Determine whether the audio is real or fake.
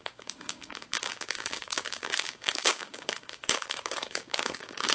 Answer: fake